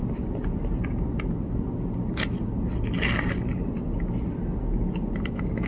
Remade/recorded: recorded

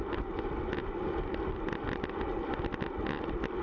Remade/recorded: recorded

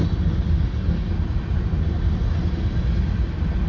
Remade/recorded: recorded